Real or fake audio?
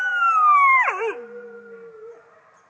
real